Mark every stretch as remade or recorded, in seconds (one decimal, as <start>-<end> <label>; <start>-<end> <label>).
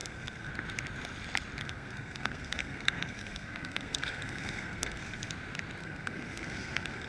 0.0-0.5 remade; 0.5-1.6 recorded; 1.6-5.3 remade; 5.3-5.8 recorded; 5.8-7.1 remade